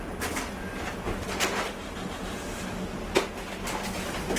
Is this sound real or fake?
real